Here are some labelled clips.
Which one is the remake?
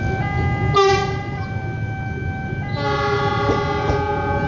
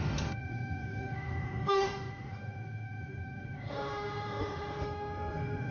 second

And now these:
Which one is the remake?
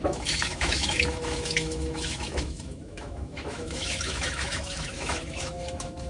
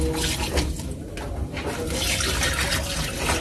first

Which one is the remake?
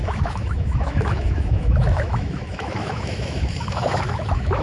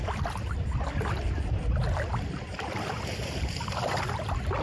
first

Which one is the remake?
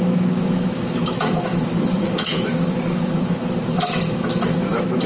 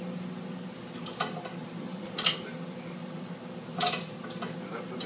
first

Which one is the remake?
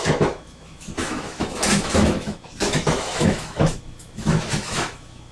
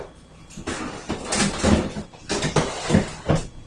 first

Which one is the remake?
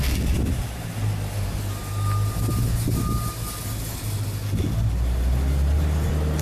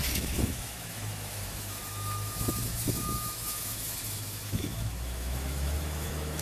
second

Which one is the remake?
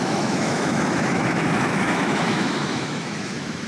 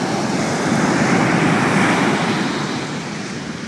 first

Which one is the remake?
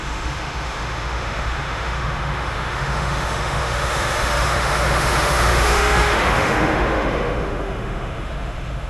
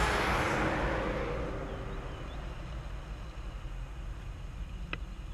first